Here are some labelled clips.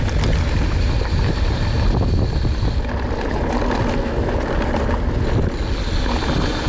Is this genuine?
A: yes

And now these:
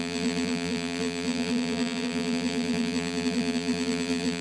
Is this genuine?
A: no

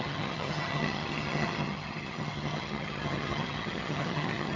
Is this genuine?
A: no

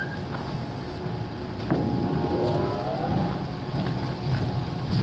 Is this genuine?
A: yes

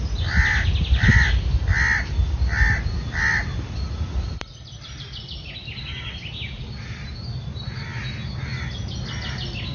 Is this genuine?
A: yes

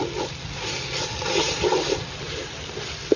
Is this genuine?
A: yes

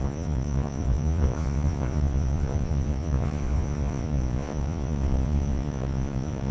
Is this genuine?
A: no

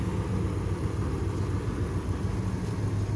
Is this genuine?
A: yes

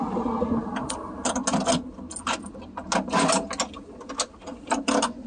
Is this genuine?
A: yes